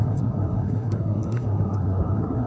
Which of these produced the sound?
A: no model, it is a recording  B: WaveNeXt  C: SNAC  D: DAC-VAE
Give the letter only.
C